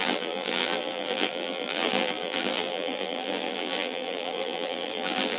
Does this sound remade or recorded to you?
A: remade